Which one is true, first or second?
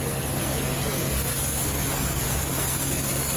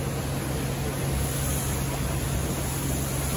second